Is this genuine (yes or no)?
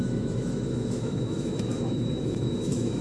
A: no